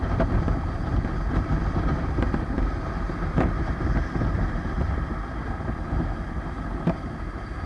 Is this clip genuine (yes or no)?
yes